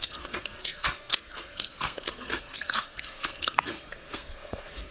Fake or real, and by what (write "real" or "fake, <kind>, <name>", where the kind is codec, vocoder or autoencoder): fake, codec, SNAC